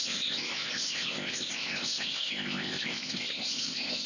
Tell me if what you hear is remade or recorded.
remade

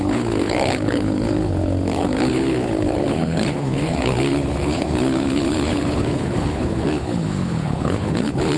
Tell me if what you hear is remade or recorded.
remade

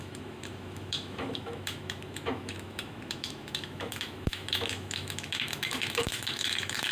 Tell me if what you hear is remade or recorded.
remade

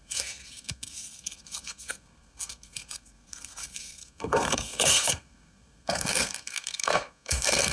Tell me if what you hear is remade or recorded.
remade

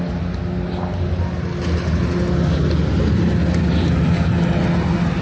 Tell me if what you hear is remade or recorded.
recorded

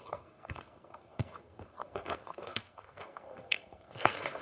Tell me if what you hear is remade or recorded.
remade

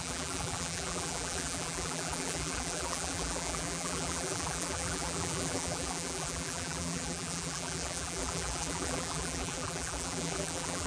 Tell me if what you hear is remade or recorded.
remade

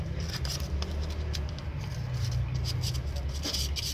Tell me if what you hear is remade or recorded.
recorded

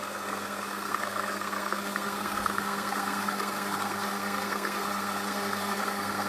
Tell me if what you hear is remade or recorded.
remade